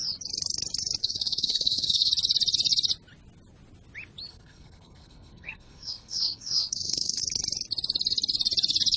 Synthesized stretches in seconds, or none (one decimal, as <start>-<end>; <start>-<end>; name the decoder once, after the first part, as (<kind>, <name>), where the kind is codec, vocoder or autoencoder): 1.0-2.1 (codec, SNAC); 4.3-7.2